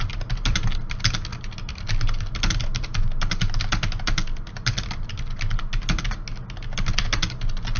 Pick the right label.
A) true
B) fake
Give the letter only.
A